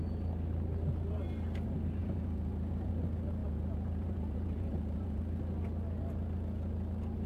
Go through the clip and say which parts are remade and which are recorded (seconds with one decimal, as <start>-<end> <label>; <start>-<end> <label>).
0.0-2.0 recorded; 2.0-2.9 remade; 2.9-3.4 recorded; 3.4-5.2 remade; 5.2-7.3 recorded